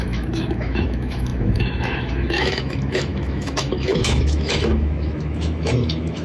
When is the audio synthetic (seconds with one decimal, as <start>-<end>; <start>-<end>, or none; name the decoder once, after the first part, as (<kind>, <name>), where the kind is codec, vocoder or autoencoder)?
0.0-6.2 (autoencoder, DAC-VAE)